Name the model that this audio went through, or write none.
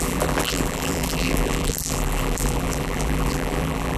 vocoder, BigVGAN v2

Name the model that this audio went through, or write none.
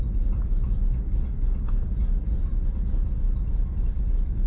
vocoder, BigVGAN v2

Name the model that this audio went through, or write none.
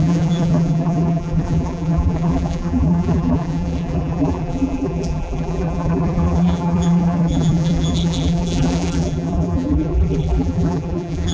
vocoder, BigVGAN v2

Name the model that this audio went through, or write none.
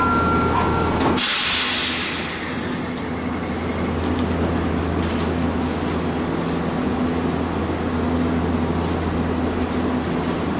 none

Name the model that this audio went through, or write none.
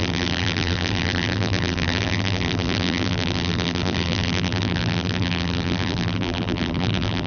vocoder, BigVGAN v2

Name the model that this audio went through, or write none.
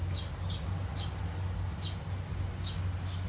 none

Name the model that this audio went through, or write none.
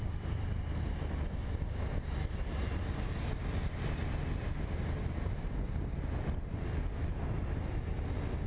none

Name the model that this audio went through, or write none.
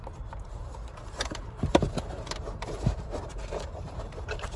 vocoder, BigVGAN v2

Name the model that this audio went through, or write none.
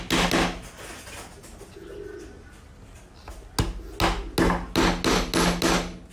none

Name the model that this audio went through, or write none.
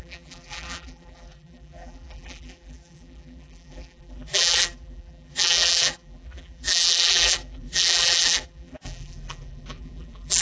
vocoder, BigVGAN v2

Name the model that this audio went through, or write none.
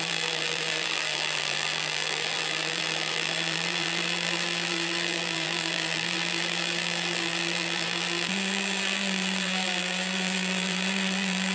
vocoder, BigVGAN v2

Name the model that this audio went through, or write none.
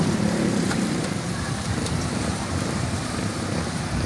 vocoder, BigVGAN v2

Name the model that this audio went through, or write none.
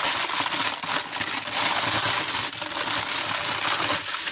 none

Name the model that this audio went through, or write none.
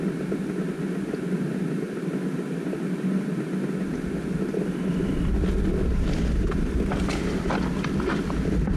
none